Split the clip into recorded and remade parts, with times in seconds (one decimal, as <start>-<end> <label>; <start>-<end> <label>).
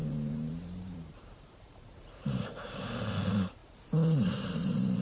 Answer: 0.0-3.0 remade; 3.0-3.6 recorded; 3.6-5.0 remade